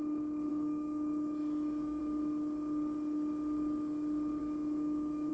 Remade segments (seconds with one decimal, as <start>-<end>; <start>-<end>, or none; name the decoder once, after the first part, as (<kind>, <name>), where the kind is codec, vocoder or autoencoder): 0.5-2.0 (autoencoder, DAC-VAE); 4.4-5.3

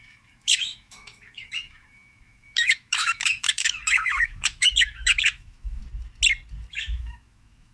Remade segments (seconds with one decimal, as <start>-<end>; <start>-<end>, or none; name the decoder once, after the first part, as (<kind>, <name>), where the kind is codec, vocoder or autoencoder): 0.0-5.8 (autoencoder, DAC-VAE); 6.7-7.7

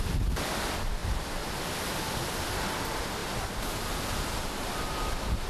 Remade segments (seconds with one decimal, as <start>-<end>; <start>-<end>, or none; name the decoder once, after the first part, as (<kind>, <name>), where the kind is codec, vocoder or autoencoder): none